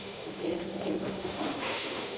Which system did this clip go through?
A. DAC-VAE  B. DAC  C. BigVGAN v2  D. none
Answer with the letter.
A